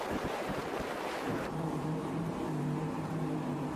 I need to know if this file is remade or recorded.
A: remade